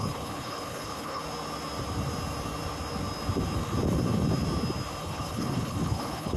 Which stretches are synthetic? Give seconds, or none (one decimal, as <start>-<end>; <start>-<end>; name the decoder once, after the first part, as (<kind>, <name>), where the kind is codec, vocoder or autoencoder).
0.0-1.2 (codec, HILCodec); 5.0-6.4